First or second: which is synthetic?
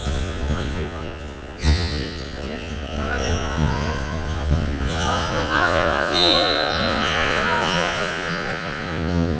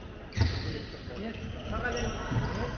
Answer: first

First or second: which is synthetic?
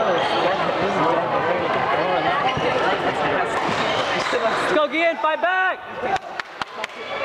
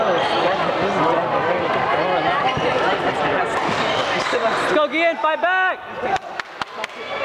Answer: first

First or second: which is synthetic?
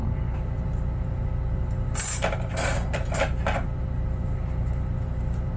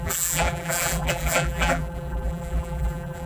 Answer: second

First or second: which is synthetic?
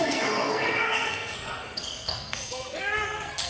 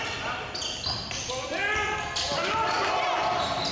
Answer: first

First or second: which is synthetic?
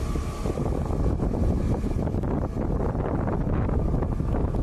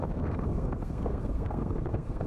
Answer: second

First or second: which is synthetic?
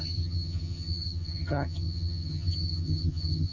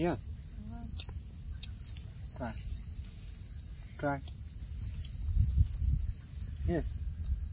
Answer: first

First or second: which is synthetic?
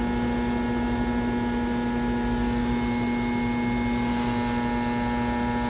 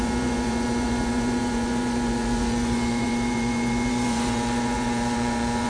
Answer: second